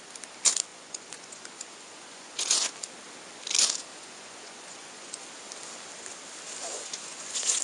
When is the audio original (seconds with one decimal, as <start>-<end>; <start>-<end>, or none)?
0.0-0.7; 2.7-3.9; 5.2-6.6